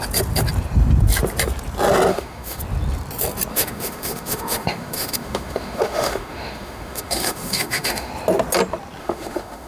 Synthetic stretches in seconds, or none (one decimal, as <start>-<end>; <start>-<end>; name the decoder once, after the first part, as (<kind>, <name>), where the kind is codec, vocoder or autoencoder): 2.1-2.6 (autoencoder, DAC-VAE); 3.5-8.1; 9.0-9.7